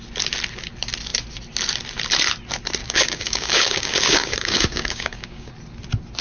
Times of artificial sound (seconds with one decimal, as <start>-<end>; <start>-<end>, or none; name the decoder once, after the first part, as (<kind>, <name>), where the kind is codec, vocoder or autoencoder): 2.8-5.5 (codec, DAC)